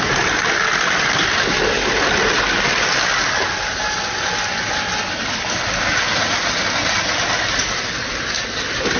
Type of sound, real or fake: real